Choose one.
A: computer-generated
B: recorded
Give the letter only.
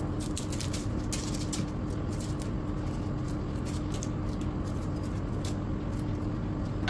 B